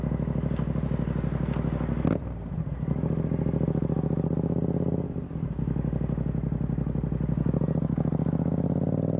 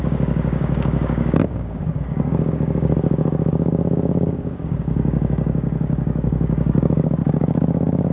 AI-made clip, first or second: second